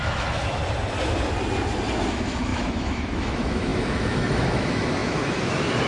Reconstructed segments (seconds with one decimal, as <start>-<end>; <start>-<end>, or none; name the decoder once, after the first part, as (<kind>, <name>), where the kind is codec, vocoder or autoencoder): 0.0-0.6 (autoencoder, DAC-VAE); 2.1-5.9